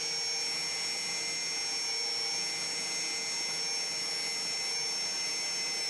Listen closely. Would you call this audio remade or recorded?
recorded